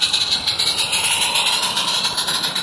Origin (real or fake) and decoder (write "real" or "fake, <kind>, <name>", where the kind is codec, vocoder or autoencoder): real